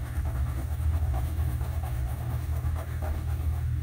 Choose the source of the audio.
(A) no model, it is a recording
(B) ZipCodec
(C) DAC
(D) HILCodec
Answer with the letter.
C